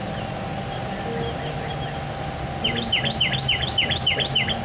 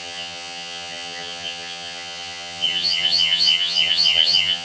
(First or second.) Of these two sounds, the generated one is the second